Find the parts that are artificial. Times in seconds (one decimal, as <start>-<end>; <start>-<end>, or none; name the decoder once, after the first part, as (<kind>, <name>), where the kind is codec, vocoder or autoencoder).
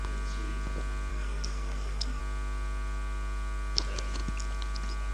1.1-2.2 (codec, SNAC)